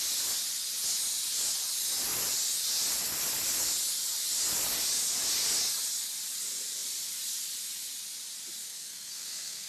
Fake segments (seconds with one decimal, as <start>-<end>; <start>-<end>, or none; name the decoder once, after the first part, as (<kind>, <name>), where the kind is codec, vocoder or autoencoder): 8.6-9.7 (codec, SNAC)